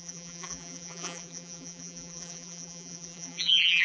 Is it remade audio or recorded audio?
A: remade